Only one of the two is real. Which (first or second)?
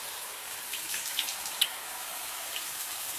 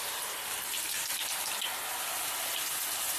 second